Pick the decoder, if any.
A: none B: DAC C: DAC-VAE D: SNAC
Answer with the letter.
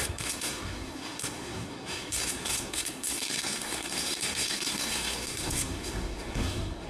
D